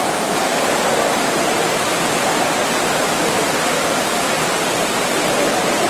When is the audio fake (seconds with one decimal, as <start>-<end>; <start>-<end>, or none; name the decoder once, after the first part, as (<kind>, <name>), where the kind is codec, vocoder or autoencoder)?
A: 0.0-0.5 (vocoder, BigVGAN v2); 4.0-5.9